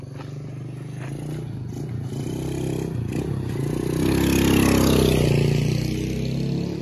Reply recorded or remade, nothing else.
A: recorded